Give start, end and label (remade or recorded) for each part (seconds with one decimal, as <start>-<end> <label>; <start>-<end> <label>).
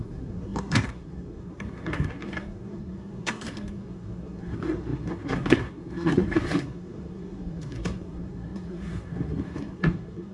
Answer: 0.0-10.3 remade